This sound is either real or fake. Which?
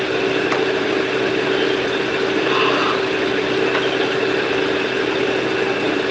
real